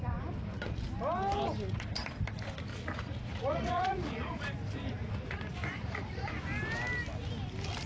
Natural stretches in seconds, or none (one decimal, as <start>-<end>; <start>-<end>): 0.0-2.7; 4.5-5.6; 6.3-7.9

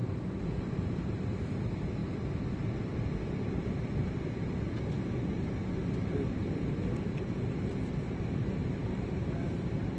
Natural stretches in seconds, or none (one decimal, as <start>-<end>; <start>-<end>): 0.0-10.0

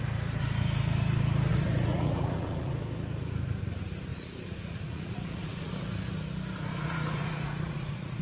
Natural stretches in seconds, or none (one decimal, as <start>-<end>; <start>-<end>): 0.0-1.5; 2.7-4.1; 5.7-6.7